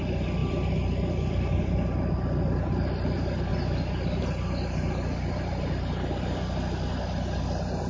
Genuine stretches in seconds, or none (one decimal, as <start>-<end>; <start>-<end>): 0.0-7.9